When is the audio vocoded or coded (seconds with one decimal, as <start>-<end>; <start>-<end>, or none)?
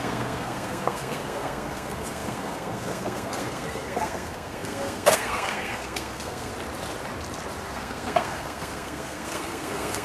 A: 0.0-6.5; 7.7-10.0